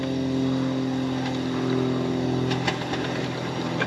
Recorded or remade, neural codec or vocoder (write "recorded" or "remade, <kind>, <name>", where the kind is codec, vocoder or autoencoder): recorded